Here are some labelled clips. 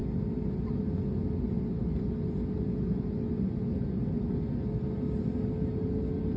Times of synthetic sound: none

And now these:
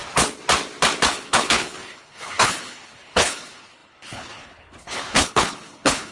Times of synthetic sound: 1.1-6.1 (codec, HILCodec)

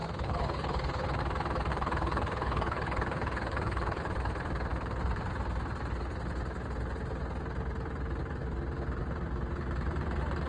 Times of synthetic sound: 0.0-1.2 (codec, HILCodec); 1.7-4.0